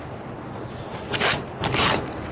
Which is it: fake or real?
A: real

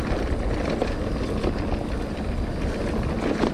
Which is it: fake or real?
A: real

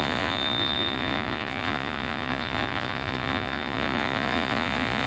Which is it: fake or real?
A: fake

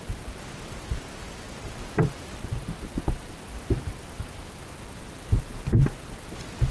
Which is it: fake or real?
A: real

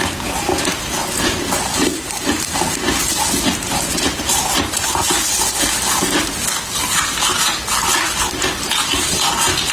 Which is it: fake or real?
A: real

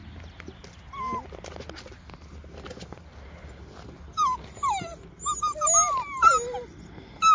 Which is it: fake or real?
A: real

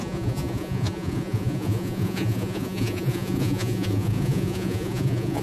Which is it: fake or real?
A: fake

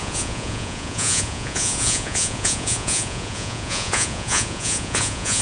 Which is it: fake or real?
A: fake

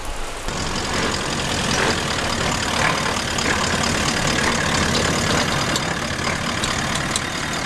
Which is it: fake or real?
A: real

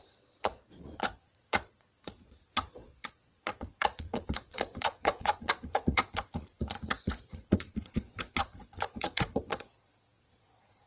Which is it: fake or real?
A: fake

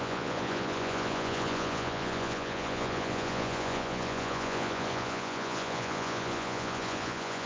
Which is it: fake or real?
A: fake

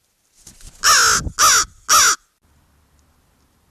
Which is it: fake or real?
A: real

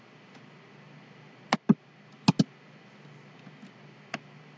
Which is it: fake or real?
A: real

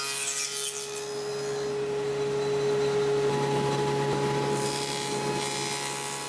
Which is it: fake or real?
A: real